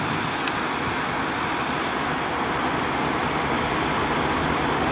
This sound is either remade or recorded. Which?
recorded